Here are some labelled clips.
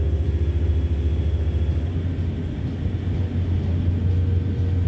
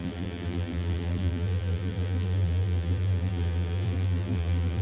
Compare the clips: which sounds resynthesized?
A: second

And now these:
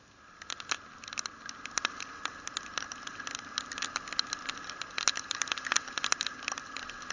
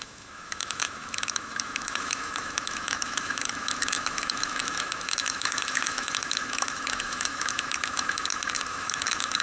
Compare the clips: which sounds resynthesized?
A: second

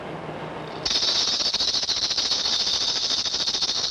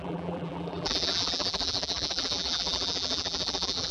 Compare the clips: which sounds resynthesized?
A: second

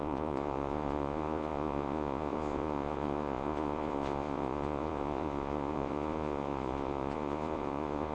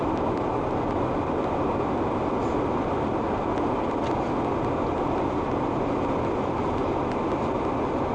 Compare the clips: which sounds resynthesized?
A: first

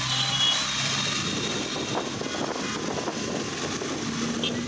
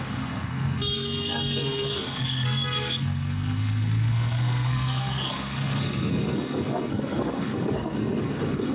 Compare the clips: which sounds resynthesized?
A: second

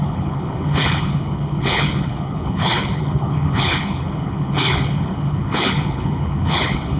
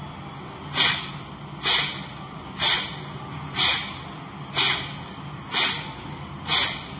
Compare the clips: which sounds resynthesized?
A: first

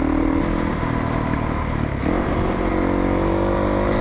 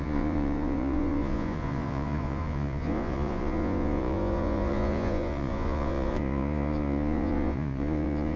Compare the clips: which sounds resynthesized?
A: second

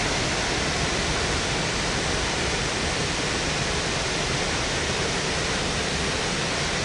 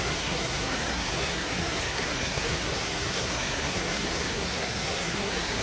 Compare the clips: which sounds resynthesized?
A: second